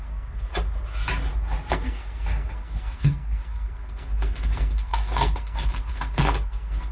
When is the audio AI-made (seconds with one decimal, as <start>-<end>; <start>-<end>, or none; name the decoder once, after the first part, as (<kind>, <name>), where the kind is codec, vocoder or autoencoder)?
0.0-0.5 (codec, SNAC); 1.7-6.9